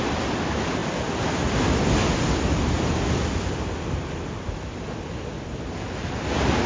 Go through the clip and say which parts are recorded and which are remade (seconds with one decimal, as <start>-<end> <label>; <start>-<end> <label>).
0.0-6.7 recorded